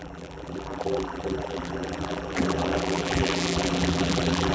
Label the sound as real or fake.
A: fake